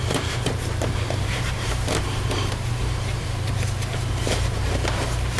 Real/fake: fake